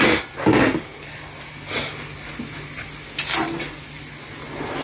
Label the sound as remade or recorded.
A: recorded